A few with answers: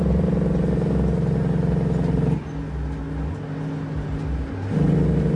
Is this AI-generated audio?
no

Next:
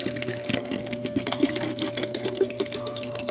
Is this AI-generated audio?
yes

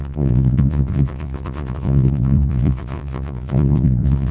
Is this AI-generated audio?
yes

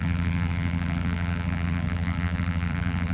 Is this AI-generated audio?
yes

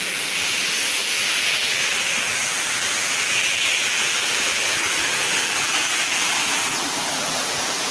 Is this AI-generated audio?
yes